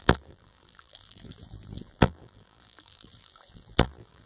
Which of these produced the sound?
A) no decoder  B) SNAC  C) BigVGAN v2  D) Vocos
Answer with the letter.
C